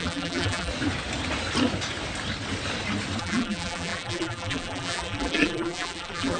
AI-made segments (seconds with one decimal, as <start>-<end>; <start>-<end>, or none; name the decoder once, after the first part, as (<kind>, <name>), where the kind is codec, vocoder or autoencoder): 0.0-0.7 (vocoder, BigVGAN v2); 3.2-6.4